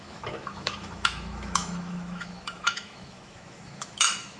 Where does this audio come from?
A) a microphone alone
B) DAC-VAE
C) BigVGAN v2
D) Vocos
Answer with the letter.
B